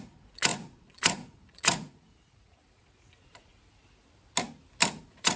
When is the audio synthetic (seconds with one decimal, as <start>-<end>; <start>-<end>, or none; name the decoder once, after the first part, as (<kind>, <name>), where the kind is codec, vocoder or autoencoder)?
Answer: 0.0-3.5 (vocoder, Vocos); 5.0-5.4